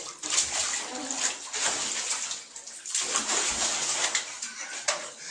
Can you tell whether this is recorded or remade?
recorded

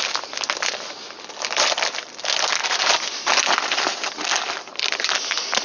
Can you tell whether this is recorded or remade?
recorded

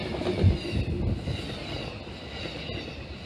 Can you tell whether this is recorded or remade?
recorded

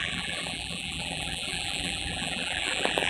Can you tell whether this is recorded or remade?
remade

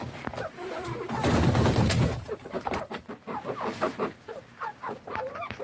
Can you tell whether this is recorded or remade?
remade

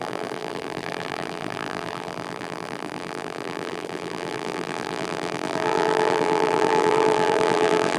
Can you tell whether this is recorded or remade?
remade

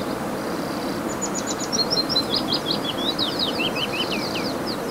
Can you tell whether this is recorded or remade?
remade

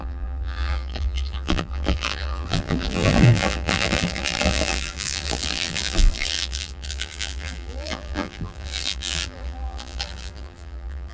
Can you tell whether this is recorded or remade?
remade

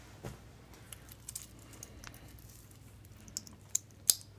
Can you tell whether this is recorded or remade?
recorded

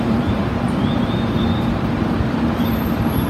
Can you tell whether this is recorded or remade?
remade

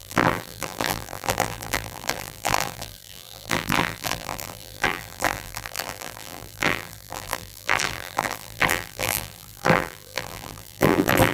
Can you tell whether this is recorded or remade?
remade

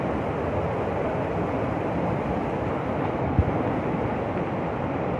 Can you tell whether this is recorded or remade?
recorded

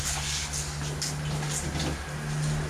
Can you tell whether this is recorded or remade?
recorded